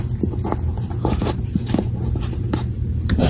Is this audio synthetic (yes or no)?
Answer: no